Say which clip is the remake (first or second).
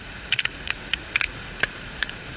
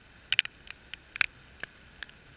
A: first